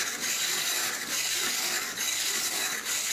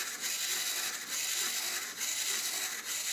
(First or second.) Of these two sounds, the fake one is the first